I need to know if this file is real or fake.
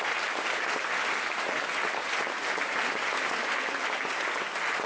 real